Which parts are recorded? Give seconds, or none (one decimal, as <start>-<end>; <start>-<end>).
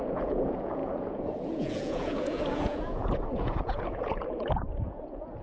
none